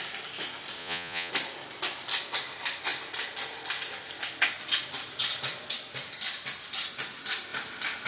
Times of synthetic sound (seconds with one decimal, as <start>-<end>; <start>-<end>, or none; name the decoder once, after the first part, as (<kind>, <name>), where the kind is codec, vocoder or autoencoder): 0.8-1.3 (vocoder, Vocos)